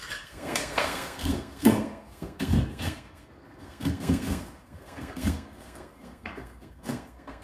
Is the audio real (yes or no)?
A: no